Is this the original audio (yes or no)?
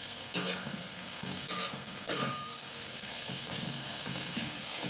no